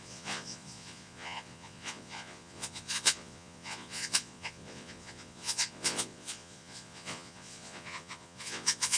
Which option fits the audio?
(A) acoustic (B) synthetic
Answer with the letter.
B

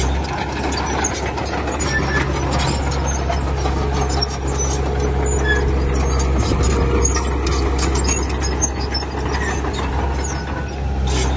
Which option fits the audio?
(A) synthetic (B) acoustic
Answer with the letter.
B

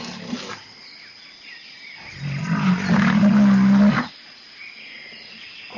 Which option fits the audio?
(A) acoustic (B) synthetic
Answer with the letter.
A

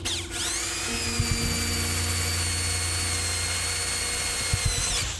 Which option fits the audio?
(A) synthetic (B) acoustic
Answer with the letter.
B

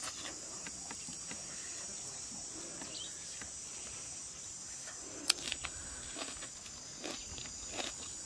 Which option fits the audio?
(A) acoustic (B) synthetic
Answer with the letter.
A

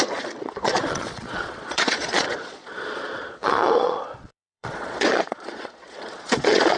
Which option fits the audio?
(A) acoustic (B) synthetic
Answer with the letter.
B